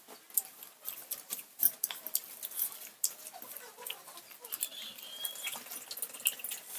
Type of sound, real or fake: real